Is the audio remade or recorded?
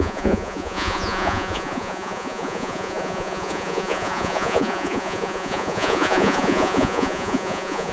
remade